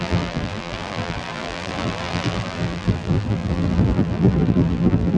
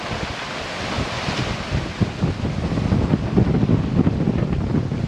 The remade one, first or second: first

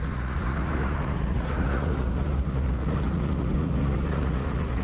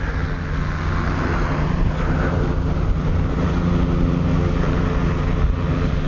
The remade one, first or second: first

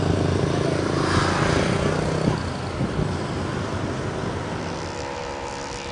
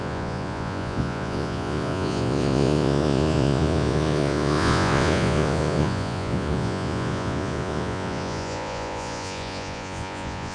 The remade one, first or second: second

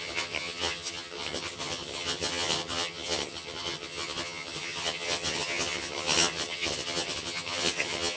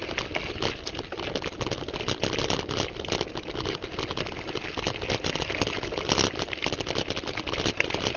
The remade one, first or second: first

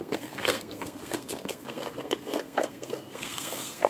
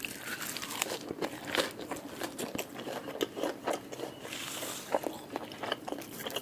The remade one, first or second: first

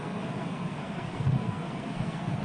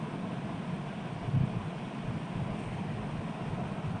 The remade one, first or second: first